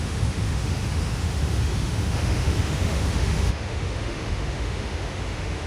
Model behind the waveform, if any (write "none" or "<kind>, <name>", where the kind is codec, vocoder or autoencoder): autoencoder, DAC-VAE